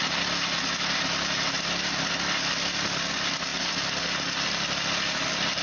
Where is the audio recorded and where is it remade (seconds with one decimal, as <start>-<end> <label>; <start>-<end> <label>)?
0.0-5.6 recorded